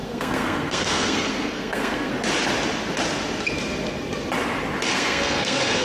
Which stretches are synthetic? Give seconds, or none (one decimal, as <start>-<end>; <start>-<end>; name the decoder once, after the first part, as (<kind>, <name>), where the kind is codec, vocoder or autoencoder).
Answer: 0.0-2.1 (codec, SNAC); 4.9-5.8

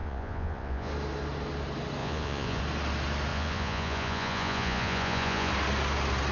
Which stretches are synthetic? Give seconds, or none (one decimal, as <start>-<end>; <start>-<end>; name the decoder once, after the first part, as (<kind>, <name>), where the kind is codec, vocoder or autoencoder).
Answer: 0.0-0.9 (vocoder, Vocos); 2.0-2.6; 3.3-5.5

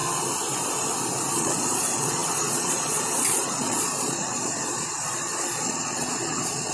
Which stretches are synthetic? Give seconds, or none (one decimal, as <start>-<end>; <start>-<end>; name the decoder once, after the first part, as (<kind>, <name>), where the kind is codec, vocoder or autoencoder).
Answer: 1.3-6.7 (vocoder, Vocos)

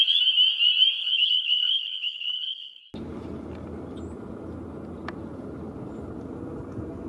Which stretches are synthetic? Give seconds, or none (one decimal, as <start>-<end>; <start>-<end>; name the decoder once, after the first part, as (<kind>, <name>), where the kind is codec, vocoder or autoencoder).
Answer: 1.0-2.8 (codec, HILCodec)